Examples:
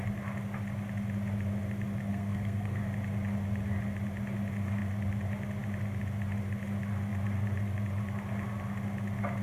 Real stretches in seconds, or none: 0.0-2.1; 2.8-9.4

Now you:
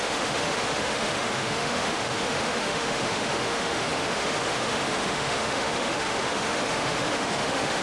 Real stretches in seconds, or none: none

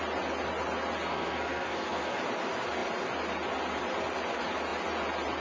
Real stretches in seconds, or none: 0.0-1.1; 2.2-5.4